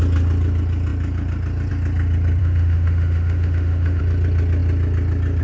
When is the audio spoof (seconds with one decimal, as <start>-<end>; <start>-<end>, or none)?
2.4-4.0

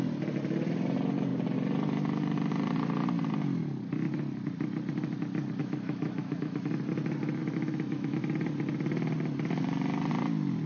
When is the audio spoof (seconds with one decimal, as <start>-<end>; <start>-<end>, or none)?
5.6-6.7; 7.4-8.2